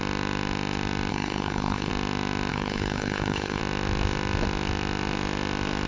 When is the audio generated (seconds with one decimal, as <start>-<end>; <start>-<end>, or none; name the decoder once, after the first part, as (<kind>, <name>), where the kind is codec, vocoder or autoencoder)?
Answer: 1.1-1.9 (codec, HILCodec); 2.5-3.6